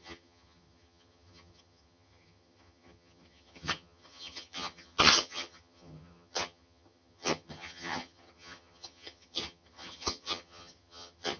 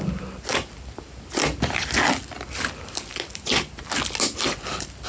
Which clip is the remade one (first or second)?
first